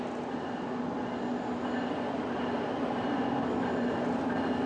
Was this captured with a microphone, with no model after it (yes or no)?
yes